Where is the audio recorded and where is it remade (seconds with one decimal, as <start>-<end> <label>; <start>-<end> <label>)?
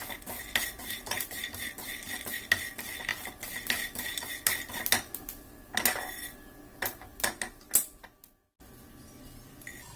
0.0-0.8 recorded; 0.8-1.5 remade; 1.5-10.0 recorded